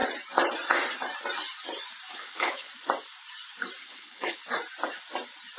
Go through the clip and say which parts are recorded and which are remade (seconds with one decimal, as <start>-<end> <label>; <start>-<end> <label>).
0.0-2.1 recorded; 2.1-2.7 remade; 2.7-3.8 recorded; 3.8-4.4 remade; 4.4-5.6 recorded